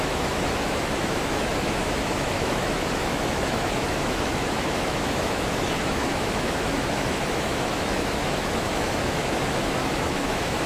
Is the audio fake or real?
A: fake